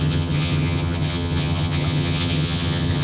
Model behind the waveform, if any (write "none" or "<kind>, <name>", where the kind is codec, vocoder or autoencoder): vocoder, HiFi-GAN